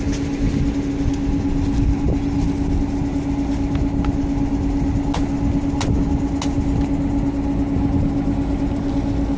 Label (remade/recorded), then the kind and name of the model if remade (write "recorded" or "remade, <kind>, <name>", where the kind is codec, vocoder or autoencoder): recorded